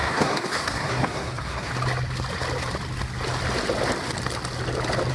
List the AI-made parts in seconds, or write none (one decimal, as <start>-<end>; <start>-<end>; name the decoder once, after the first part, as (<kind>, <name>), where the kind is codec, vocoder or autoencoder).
0.0-1.7 (codec, SNAC)

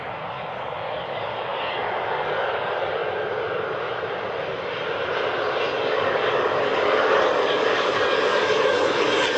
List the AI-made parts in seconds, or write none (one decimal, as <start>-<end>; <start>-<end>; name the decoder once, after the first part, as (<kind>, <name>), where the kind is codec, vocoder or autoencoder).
0.0-3.0 (codec, DAC); 5.8-9.4

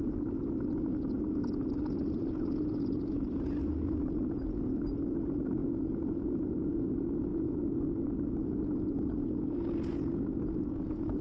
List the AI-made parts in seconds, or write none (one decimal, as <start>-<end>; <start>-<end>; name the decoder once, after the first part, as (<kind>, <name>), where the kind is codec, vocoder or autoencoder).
none

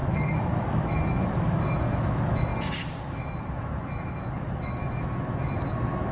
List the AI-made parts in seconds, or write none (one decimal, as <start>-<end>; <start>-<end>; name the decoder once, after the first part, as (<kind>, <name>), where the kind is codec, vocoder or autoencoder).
0.0-2.5 (autoencoder, DAC-VAE); 3.1-6.1